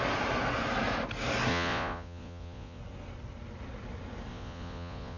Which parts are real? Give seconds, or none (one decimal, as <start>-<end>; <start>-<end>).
0.0-1.5; 2.8-4.3